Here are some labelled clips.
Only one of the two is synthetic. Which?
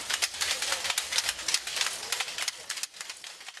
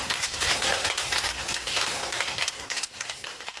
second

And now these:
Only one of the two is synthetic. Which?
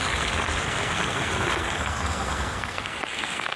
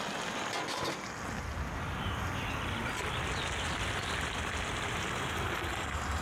first